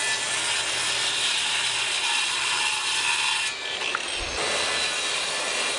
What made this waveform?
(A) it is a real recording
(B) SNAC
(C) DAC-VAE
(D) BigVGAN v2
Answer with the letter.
A